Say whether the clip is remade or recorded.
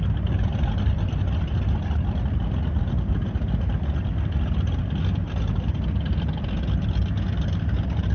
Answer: recorded